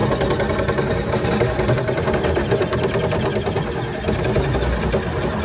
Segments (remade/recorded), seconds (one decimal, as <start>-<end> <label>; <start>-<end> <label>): 0.0-5.4 recorded